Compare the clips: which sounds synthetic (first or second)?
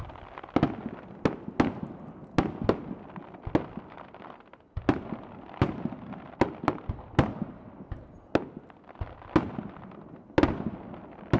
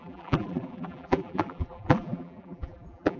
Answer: second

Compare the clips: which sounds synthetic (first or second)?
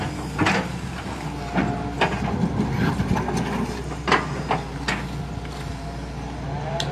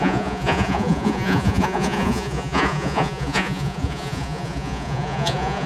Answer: second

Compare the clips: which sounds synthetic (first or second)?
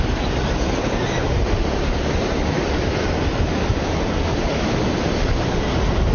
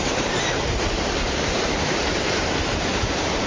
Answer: second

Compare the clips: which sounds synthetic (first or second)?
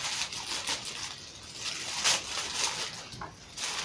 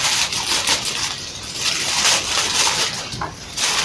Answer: second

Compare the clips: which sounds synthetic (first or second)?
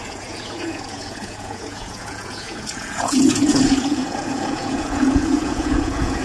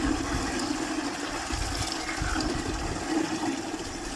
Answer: first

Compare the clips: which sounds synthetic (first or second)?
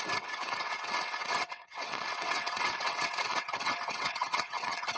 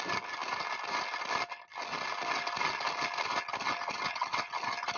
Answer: first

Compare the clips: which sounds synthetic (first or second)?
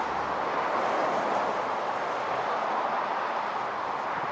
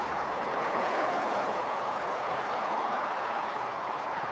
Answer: second